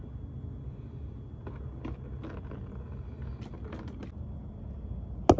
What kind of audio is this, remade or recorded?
recorded